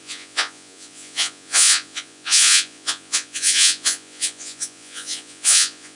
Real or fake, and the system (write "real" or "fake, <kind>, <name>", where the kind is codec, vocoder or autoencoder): fake, vocoder, Vocos